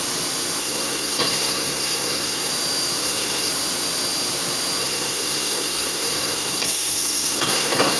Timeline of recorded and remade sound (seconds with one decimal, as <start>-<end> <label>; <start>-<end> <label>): 0.0-0.6 recorded; 0.6-2.5 remade; 2.5-3.0 recorded; 3.0-3.5 remade; 3.5-4.8 recorded; 4.8-8.0 remade